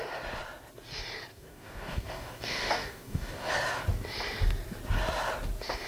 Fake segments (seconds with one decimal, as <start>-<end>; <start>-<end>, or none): 1.3-3.5